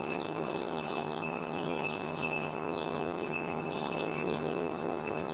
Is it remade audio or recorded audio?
remade